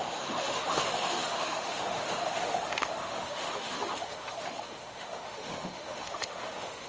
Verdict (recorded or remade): remade